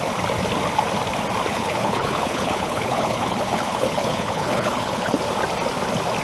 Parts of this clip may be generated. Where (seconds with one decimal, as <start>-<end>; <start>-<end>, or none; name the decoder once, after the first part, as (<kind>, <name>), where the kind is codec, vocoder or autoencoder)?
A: 1.5-5.2 (codec, HILCodec)